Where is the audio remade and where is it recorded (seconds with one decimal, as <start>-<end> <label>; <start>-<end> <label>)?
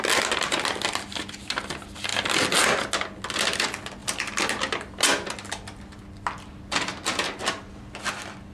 0.0-8.5 recorded